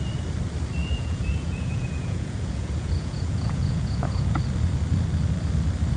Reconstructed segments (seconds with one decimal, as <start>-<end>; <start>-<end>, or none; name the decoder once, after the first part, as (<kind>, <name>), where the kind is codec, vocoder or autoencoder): 0.8-4.4 (vocoder, Vocos)